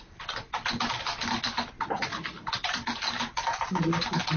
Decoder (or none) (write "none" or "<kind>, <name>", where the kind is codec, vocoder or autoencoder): none